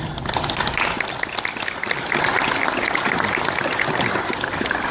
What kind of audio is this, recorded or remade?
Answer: recorded